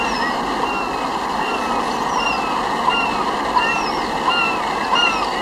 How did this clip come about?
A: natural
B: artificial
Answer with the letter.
A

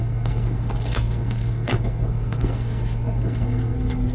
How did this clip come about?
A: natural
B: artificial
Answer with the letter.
B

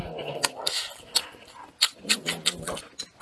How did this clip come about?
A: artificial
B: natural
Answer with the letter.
B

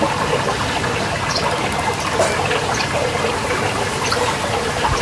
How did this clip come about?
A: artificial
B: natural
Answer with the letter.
B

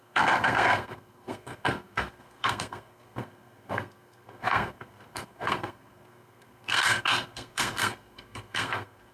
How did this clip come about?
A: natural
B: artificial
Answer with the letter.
B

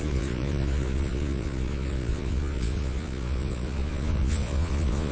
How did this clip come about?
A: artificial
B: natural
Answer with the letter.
A